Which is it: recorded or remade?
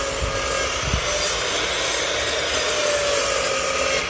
recorded